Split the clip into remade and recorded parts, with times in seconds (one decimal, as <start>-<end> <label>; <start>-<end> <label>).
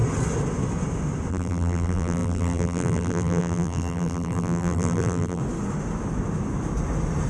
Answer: 0.0-1.3 recorded; 1.3-5.4 remade; 5.4-7.3 recorded